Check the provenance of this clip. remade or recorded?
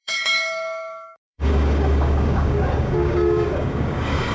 remade